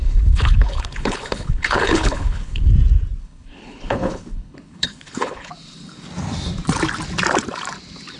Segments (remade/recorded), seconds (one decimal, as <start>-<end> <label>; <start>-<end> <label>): 0.0-2.7 remade; 2.7-3.2 recorded; 3.2-5.5 remade; 5.5-8.2 recorded